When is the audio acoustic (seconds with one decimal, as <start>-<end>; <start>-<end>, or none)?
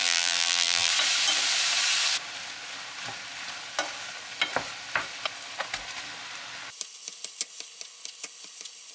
0.9-8.9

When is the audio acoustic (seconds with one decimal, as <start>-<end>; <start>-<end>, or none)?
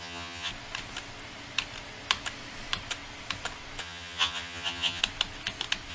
0.5-3.8; 5.0-5.9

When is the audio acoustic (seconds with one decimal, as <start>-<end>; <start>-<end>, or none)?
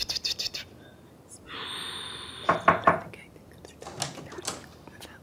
0.0-5.2